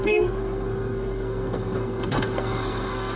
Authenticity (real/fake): fake